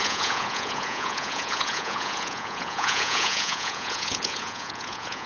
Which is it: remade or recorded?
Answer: remade